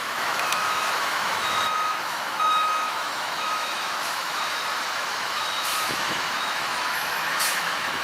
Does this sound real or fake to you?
fake